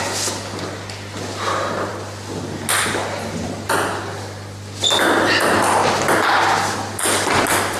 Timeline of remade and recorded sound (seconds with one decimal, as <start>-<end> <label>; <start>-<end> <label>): 0.0-7.8 recorded